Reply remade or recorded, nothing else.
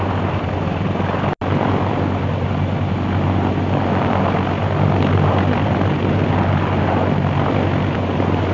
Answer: recorded